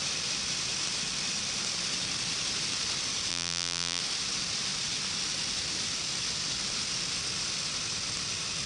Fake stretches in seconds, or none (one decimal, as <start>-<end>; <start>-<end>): 3.3-4.0